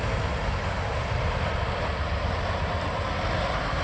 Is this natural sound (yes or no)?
yes